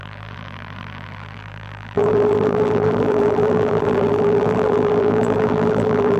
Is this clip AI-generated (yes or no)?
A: yes